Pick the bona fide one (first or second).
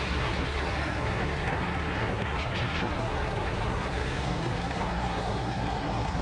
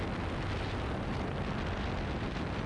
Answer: second